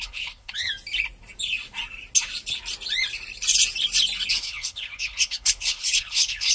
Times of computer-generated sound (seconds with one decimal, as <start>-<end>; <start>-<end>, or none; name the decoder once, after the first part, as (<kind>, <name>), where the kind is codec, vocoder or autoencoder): 0.0-0.7 (codec, HILCodec); 4.4-6.5